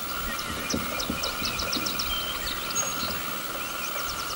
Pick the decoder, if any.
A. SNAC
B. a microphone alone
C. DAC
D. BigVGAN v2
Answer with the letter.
B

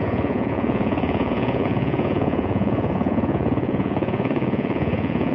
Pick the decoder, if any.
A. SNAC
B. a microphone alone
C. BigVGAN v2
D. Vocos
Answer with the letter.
D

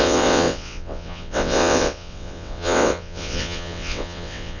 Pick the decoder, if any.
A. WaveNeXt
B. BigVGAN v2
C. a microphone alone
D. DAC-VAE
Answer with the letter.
A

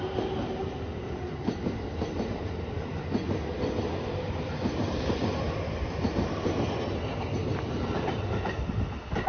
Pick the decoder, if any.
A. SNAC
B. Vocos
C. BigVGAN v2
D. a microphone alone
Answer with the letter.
D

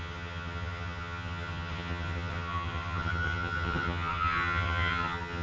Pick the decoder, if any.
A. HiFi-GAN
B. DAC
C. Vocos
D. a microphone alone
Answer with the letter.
A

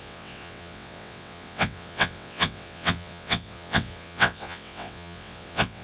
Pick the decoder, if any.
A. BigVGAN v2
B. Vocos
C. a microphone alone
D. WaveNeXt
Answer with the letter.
D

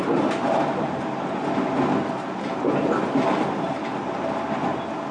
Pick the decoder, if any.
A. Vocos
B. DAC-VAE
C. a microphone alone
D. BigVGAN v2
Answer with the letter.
C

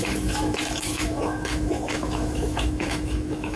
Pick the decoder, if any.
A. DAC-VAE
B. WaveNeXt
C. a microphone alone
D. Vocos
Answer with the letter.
A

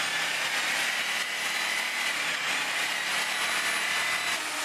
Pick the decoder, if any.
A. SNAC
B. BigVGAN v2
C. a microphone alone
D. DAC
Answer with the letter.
C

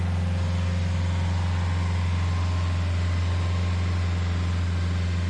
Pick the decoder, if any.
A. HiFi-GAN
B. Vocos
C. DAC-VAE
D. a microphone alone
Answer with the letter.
D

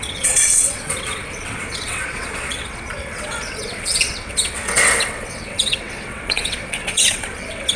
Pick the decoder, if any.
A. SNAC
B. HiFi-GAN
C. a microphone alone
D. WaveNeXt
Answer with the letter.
D